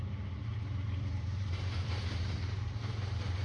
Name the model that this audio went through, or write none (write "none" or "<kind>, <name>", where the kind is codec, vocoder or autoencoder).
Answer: vocoder, BigVGAN v2